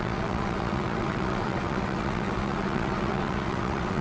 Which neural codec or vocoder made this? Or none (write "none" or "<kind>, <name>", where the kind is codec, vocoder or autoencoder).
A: vocoder, WaveNeXt